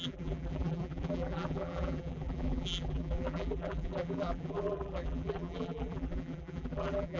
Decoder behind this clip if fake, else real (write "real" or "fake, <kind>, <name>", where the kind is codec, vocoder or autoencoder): fake, vocoder, BigVGAN v2